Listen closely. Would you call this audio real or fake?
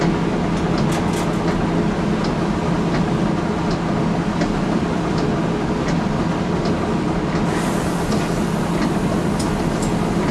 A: real